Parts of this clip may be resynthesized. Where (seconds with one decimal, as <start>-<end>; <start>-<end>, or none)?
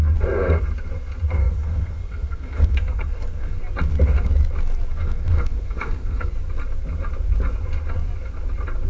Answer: 1.4-3.6; 4.9-6.3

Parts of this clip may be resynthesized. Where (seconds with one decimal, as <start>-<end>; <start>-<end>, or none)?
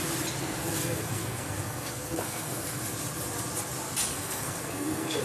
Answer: 0.4-2.8; 4.1-5.2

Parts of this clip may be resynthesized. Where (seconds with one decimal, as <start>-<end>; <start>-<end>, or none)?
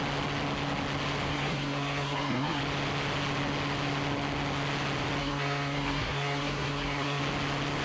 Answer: 1.3-2.6; 5.2-7.2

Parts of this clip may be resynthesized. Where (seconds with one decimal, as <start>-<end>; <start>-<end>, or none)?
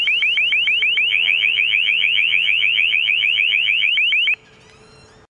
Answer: 1.1-3.9